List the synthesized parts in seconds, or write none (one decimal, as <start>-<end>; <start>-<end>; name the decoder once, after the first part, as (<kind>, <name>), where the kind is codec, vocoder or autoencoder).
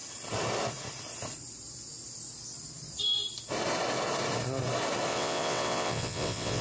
5.1-6.6 (vocoder, WaveNeXt)